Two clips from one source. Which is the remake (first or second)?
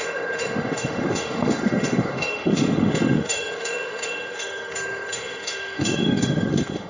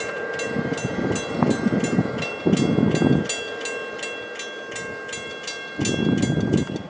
first